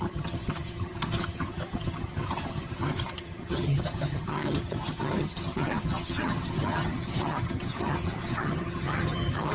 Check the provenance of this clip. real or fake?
fake